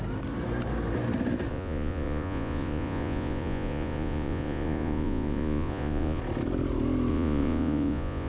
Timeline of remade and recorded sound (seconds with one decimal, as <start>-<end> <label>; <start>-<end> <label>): 0.0-1.5 recorded; 1.5-6.2 remade; 6.2-7.1 recorded; 7.1-8.3 remade